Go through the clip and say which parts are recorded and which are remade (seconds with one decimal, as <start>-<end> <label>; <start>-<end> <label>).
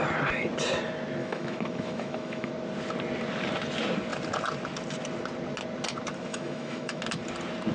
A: 0.0-1.2 recorded; 1.2-2.5 remade; 2.5-6.3 recorded; 6.3-7.0 remade; 7.0-7.7 recorded